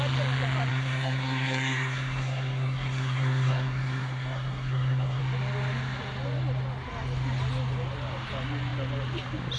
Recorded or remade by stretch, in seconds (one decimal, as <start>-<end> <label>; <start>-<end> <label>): 0.0-0.7 recorded; 0.7-5.2 remade; 5.2-9.6 recorded